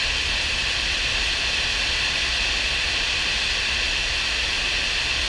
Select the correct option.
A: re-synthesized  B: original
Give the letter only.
B